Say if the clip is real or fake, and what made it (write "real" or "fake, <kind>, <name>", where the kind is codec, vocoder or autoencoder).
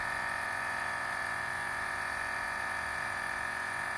fake, vocoder, Vocos